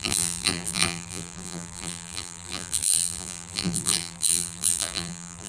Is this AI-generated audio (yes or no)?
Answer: yes